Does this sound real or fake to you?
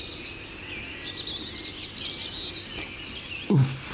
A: real